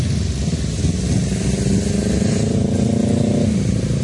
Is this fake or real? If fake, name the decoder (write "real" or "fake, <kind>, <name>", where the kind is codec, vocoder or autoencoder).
real